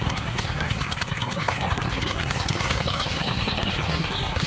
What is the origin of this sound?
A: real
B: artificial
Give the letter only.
B